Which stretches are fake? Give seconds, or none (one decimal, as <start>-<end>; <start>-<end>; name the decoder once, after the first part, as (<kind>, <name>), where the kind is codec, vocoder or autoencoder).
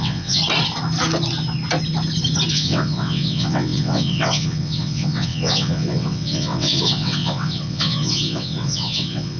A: 0.0-0.4 (vocoder, WaveNeXt); 2.5-9.4